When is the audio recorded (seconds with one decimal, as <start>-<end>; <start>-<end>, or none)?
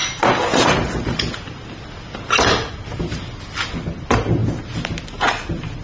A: 0.0-5.8